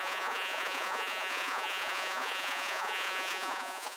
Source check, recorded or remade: remade